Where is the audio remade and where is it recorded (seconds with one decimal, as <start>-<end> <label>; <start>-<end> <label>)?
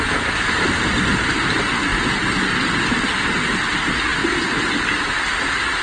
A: 0.0-5.8 recorded